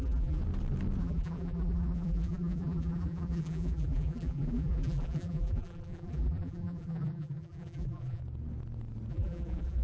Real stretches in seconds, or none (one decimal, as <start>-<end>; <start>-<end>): 0.4-1.0; 8.2-9.1